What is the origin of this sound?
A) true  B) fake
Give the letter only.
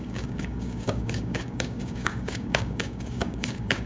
B